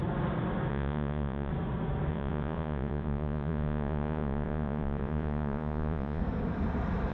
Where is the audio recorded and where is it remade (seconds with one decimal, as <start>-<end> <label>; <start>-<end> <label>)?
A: 0.0-0.7 recorded; 0.7-1.5 remade; 1.5-2.1 recorded; 2.1-6.2 remade; 6.2-7.1 recorded